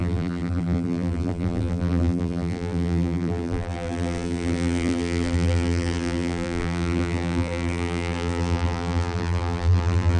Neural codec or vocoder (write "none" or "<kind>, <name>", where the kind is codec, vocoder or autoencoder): vocoder, BigVGAN v2